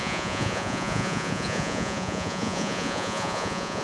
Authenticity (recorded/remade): remade